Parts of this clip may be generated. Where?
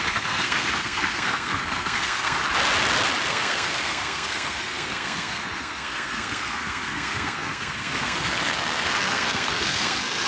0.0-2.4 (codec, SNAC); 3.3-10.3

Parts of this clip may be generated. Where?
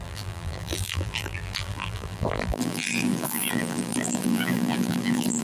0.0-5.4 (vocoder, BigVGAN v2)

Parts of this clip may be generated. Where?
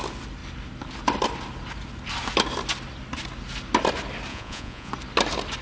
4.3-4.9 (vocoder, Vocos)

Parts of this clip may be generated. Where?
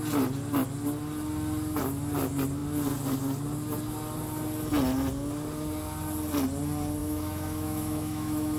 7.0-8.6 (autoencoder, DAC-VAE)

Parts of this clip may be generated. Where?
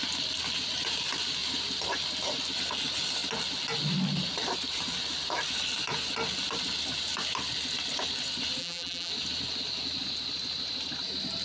8.6-9.1 (vocoder, BigVGAN v2)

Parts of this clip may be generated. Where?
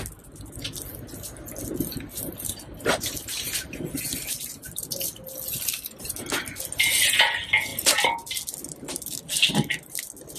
none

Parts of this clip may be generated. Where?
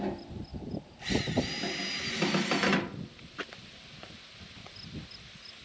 none